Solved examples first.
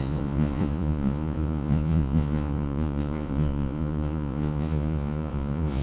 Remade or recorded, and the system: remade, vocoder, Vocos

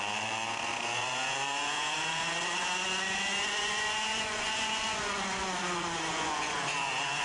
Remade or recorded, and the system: remade, vocoder, Vocos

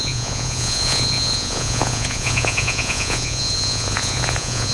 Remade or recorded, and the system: remade, vocoder, Vocos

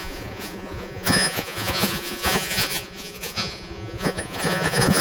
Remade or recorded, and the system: remade, vocoder, Vocos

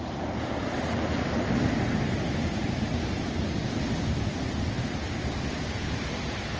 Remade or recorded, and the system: recorded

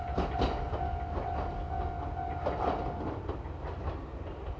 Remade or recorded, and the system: recorded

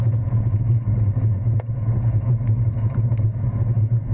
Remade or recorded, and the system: remade, vocoder, Vocos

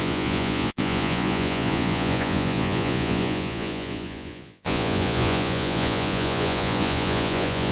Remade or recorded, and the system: remade, vocoder, Vocos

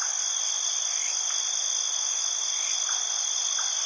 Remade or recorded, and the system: recorded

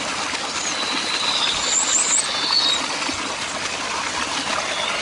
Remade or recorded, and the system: recorded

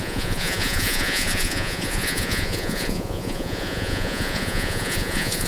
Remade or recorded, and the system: remade, vocoder, Vocos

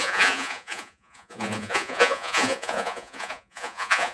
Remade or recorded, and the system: remade, vocoder, Vocos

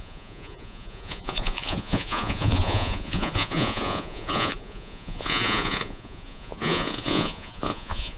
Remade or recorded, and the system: remade, vocoder, Vocos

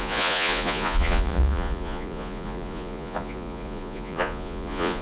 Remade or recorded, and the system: remade, vocoder, Vocos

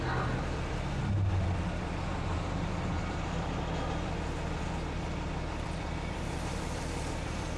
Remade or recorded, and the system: recorded